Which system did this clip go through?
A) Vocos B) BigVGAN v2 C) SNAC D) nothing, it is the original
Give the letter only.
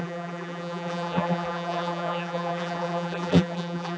B